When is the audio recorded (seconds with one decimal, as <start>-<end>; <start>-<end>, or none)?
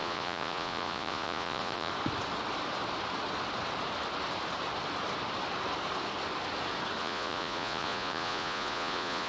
1.9-7.0